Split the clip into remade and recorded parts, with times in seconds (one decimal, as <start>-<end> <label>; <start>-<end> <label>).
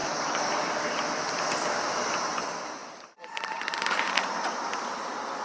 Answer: 0.0-0.8 remade; 0.8-5.4 recorded